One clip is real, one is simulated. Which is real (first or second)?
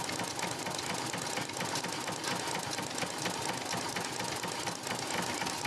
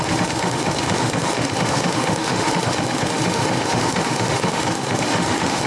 first